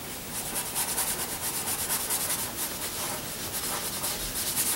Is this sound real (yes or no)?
yes